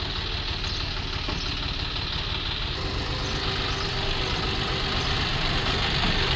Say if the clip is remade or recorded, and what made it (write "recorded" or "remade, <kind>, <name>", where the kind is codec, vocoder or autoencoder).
recorded